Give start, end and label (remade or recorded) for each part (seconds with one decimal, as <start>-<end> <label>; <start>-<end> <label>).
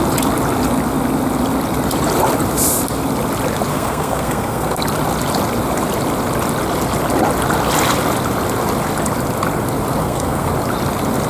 0.0-3.7 recorded; 3.7-4.8 remade; 4.8-10.0 recorded; 10.0-10.5 remade; 10.5-11.3 recorded